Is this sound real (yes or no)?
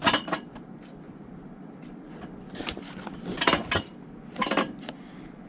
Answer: yes